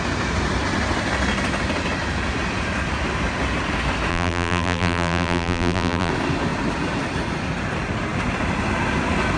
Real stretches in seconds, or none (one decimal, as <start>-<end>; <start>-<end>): 0.0-4.1; 6.1-9.4